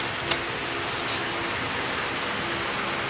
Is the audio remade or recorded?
recorded